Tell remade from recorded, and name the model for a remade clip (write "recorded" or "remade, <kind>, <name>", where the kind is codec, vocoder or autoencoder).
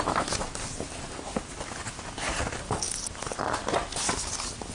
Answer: recorded